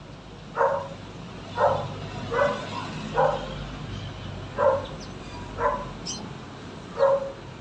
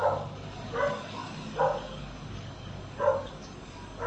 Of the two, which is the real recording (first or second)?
first